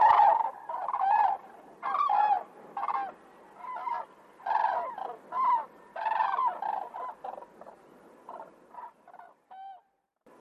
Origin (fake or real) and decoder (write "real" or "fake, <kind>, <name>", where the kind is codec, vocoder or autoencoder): real